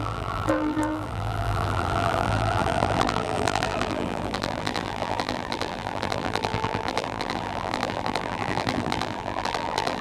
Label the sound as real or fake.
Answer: fake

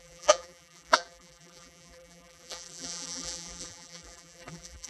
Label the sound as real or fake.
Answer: fake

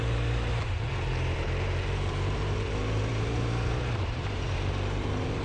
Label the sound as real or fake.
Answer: fake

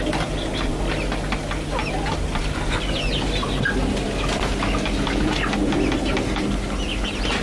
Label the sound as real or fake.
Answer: real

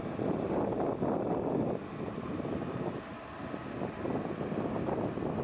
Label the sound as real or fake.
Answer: real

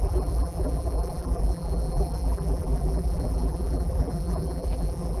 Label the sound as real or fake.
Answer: fake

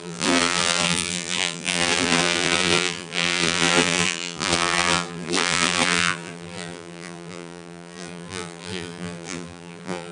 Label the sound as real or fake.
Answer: fake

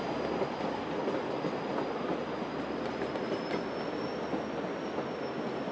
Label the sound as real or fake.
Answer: real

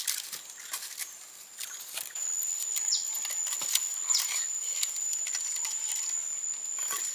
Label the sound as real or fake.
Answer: real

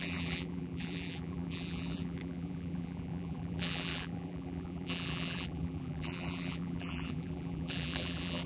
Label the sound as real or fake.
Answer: fake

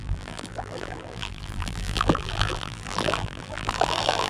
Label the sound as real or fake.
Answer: fake